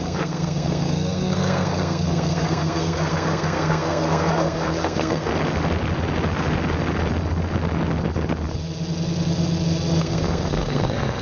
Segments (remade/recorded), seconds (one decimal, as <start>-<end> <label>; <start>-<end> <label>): 0.0-5.3 remade; 5.3-10.0 recorded; 10.0-11.2 remade